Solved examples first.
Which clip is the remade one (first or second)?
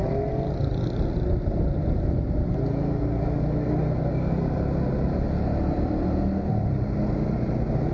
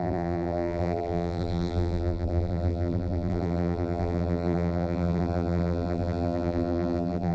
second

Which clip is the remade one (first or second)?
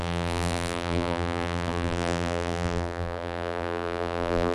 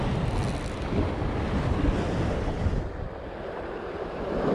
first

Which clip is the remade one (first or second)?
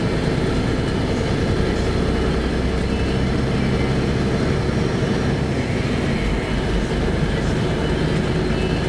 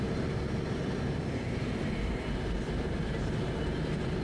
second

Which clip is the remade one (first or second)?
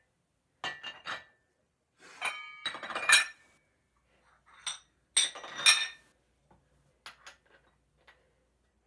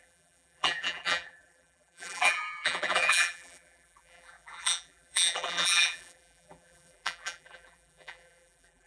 second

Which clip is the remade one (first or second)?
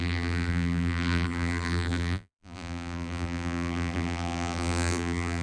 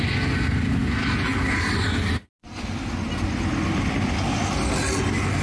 first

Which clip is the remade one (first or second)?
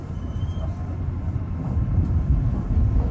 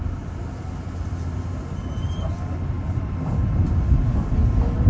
first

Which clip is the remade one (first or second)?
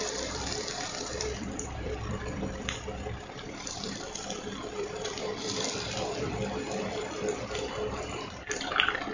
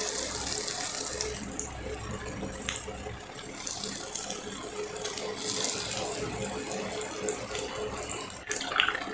first